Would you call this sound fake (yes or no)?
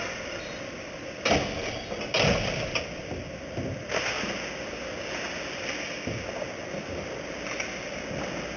no